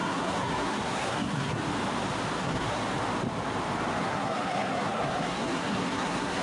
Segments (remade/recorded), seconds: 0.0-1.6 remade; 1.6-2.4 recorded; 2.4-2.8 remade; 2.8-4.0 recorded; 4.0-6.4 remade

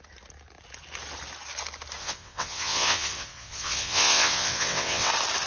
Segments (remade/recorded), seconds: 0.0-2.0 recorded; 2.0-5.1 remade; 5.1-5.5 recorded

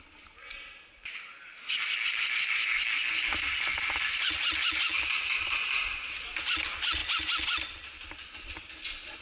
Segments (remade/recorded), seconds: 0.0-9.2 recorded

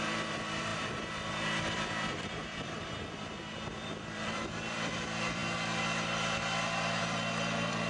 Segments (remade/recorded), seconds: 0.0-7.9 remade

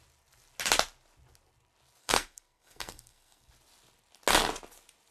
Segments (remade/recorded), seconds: 0.0-2.0 recorded; 2.0-3.5 remade; 3.5-5.1 recorded

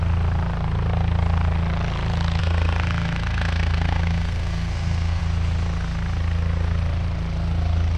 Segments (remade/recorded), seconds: 0.0-2.4 recorded; 2.4-5.2 remade; 5.2-8.0 recorded

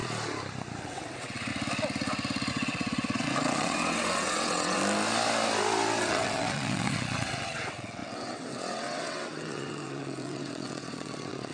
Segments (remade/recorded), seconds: 0.0-0.8 recorded; 0.8-1.5 remade; 1.5-2.5 recorded; 2.5-4.8 remade; 4.8-6.0 recorded; 6.0-11.5 remade